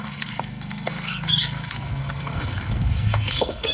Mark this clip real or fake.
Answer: fake